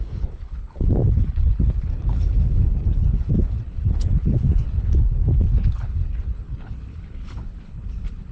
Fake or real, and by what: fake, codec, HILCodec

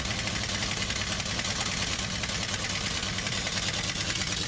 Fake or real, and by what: real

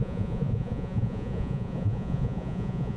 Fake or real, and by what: fake, vocoder, Vocos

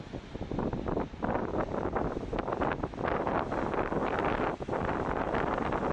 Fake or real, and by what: real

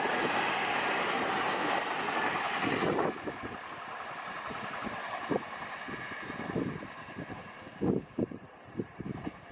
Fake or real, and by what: real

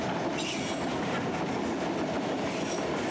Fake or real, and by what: real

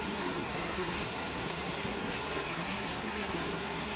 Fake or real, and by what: fake, codec, SNAC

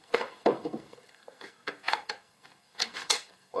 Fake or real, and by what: fake, codec, SNAC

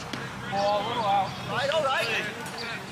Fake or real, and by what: real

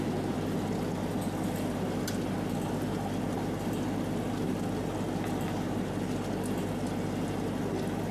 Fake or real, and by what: real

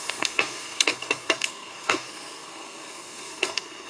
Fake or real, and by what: fake, codec, SNAC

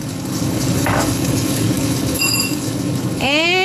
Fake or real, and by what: fake, codec, DAC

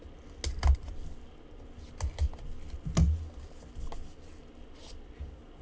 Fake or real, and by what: real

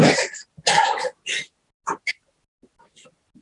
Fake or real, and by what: real